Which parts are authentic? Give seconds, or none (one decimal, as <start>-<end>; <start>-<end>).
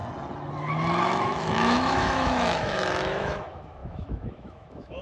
0.0-1.0